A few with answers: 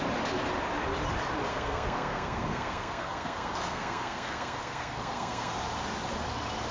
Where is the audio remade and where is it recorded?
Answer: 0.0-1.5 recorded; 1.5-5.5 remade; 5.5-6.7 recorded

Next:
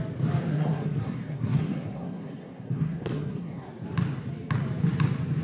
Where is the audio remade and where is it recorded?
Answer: 0.0-0.5 recorded; 0.5-3.7 remade; 3.7-5.4 recorded

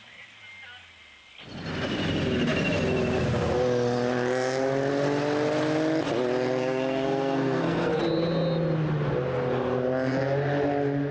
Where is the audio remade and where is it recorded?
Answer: 0.0-6.6 recorded; 6.6-8.0 remade; 8.0-11.1 recorded